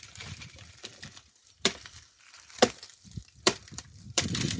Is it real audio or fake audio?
fake